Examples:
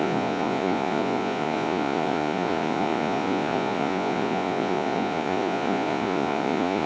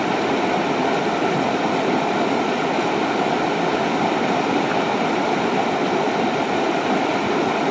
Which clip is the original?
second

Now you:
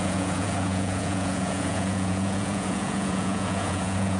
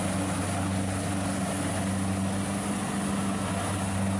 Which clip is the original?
second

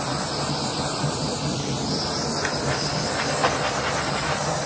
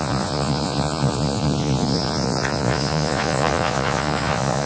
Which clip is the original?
first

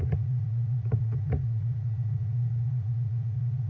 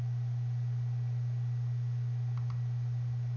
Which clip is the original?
second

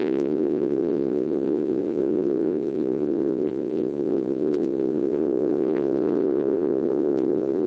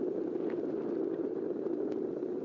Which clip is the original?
second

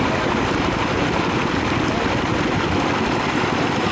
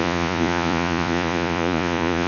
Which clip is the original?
first